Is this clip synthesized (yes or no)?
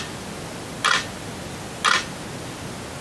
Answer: no